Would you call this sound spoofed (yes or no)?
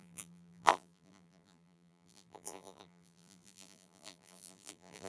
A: yes